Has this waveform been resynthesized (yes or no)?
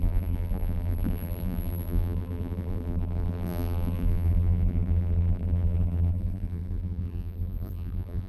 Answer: yes